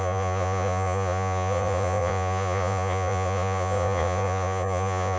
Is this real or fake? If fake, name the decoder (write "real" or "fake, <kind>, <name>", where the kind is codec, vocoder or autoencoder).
fake, vocoder, Vocos